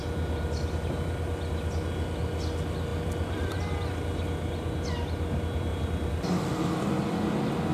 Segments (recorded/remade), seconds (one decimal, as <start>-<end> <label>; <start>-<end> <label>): 0.0-2.9 recorded; 2.9-3.6 remade; 3.6-5.7 recorded; 5.7-6.9 remade; 6.9-7.7 recorded